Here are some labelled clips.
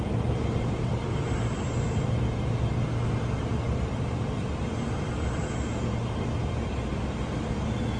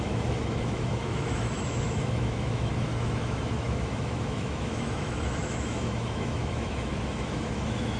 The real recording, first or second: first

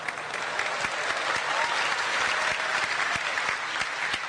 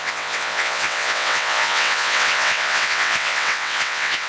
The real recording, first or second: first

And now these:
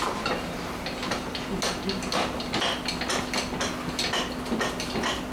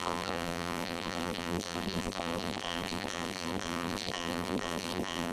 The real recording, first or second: first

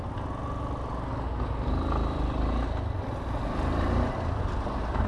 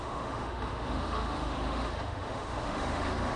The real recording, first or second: first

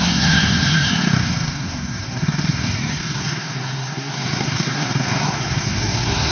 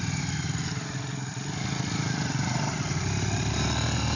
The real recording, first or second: second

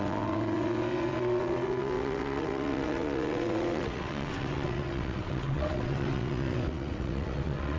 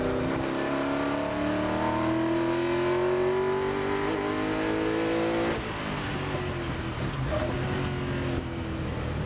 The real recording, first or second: second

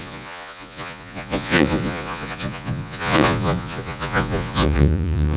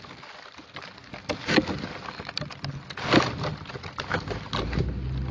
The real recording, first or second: second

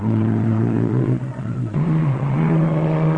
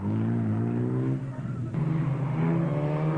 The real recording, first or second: second